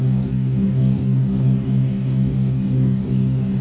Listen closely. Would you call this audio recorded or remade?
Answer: remade